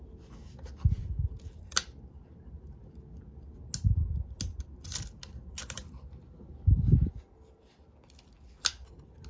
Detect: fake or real real